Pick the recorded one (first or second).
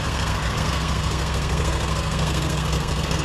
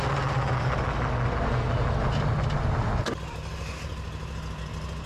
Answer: second